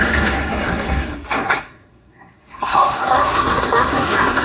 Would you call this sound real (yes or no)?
no